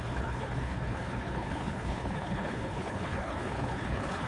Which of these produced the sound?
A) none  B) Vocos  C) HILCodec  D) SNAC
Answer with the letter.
C